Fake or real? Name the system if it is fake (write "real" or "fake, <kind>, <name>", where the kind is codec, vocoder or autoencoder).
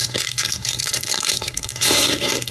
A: fake, codec, SNAC